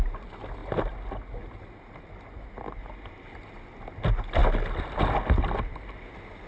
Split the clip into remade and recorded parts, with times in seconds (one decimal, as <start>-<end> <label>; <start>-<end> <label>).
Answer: 0.0-6.5 recorded